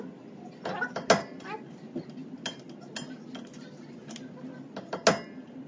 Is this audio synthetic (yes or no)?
no